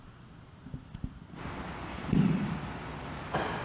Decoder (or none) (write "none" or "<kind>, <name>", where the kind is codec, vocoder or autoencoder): none